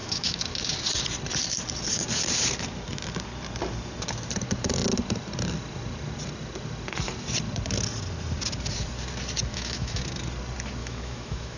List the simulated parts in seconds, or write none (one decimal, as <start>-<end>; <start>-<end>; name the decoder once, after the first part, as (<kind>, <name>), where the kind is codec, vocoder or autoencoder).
0.0-0.7 (autoencoder, DAC-VAE); 9.5-10.0; 10.8-11.6